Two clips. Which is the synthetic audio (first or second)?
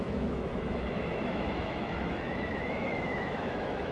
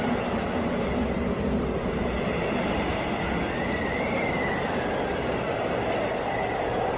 first